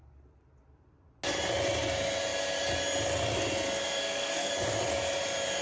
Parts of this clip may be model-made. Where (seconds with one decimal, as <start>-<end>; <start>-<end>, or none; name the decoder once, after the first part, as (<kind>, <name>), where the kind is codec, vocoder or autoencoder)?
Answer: 4.0-4.5 (codec, SNAC)